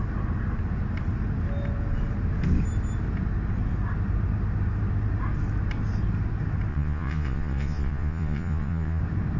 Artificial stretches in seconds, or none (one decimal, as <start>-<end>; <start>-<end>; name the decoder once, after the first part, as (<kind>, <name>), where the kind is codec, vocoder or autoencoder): 6.7-9.0 (vocoder, Vocos)